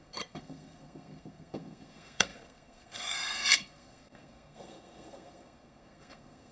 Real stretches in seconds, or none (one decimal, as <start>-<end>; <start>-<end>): none